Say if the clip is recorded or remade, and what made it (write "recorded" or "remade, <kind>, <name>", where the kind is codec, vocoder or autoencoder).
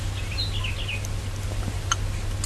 recorded